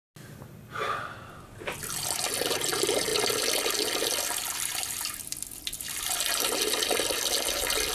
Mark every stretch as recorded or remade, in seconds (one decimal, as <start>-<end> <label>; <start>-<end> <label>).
0.0-7.9 recorded